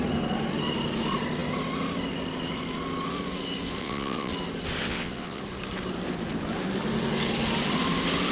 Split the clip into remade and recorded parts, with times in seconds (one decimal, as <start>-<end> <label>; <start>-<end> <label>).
0.0-3.8 recorded; 3.8-4.3 remade; 4.3-4.8 recorded; 4.8-5.4 remade; 5.4-8.3 recorded